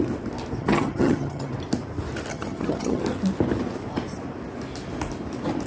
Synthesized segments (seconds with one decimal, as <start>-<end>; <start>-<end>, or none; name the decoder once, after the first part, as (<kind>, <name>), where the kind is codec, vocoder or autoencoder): 0.6-1.5 (vocoder, HiFi-GAN); 2.3-3.0